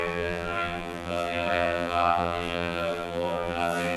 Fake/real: fake